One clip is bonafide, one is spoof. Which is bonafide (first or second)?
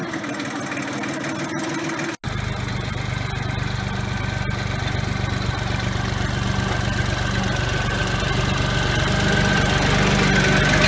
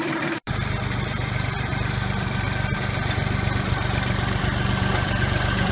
first